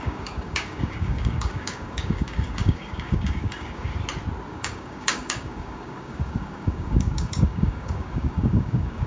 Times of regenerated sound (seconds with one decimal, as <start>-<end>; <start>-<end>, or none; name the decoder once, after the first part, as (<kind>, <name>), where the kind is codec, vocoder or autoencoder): 0.0-3.9 (codec, DAC); 4.5-9.1